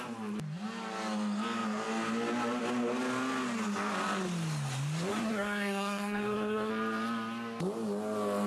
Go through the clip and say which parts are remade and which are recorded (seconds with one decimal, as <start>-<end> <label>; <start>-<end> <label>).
0.0-5.1 recorded; 5.1-6.7 remade; 6.7-8.5 recorded